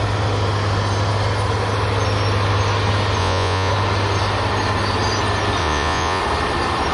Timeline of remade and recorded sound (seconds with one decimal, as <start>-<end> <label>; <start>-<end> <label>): 0.0-3.2 recorded; 3.2-3.7 remade; 3.7-5.6 recorded; 5.6-6.2 remade; 6.2-6.9 recorded